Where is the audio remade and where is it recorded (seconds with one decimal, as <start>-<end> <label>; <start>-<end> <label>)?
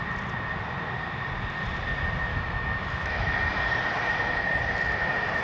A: 0.0-2.3 recorded; 2.3-3.4 remade; 3.4-5.4 recorded